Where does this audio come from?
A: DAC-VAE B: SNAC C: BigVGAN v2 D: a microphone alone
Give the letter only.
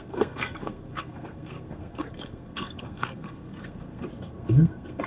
B